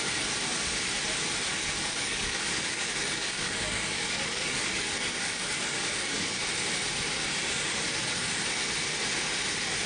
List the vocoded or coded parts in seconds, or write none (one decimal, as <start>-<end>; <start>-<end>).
1.5-6.4